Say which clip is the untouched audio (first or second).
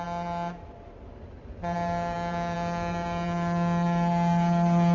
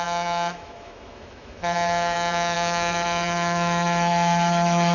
first